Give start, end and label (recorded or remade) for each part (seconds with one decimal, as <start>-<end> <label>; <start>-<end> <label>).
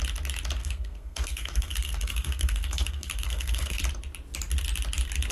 0.0-0.6 recorded; 0.6-3.8 remade; 3.8-5.3 recorded